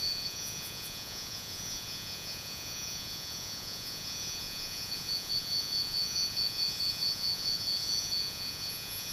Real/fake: fake